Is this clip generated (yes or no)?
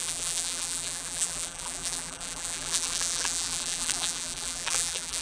yes